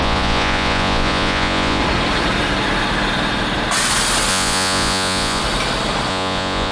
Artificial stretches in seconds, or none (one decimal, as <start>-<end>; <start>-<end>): 0.0-1.8; 4.3-5.4; 6.1-6.7